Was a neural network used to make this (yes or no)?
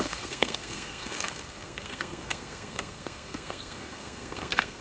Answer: yes